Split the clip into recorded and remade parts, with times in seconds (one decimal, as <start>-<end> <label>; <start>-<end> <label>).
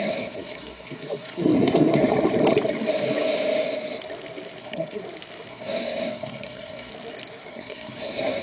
0.0-2.0 remade; 2.0-4.6 recorded; 4.6-5.0 remade; 5.0-5.5 recorded; 5.5-6.9 remade; 6.9-7.5 recorded; 7.5-8.4 remade